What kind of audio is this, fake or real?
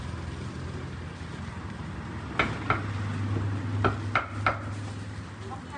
real